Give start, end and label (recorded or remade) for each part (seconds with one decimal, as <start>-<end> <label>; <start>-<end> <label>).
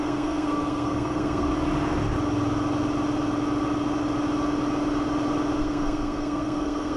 0.0-1.5 remade; 1.5-5.6 recorded; 5.6-7.0 remade